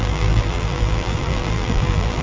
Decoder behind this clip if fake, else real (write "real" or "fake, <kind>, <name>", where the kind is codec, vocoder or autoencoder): fake, vocoder, BigVGAN v2